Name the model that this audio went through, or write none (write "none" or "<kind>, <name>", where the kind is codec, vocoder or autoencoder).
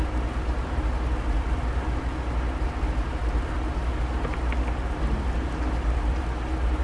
none